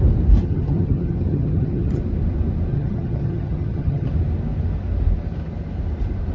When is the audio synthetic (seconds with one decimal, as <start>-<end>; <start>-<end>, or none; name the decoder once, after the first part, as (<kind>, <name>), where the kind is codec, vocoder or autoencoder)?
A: 0.4-2.0 (vocoder, HiFi-GAN); 2.7-4.1